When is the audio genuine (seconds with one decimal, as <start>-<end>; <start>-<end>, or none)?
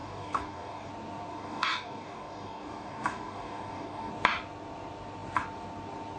0.9-1.3; 4.1-6.2